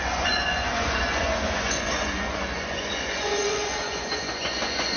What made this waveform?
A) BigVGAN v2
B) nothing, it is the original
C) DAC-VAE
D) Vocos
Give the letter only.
D